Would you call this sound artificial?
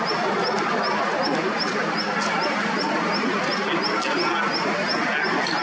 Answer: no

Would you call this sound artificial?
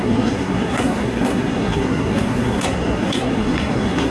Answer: yes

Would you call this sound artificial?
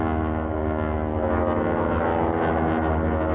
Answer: no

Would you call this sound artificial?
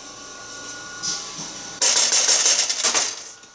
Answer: no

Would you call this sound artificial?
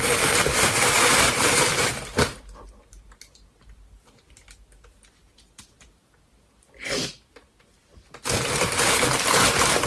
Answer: no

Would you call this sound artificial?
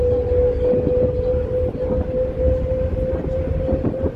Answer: no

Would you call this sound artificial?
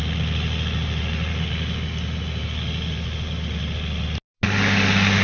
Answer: no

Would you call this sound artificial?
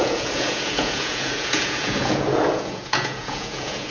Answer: yes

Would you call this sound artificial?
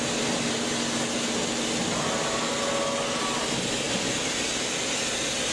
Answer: no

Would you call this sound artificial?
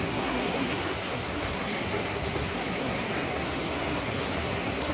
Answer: yes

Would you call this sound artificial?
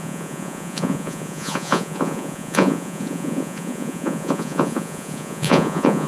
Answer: yes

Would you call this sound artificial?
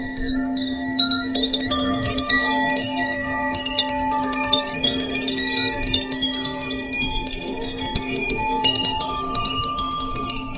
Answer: yes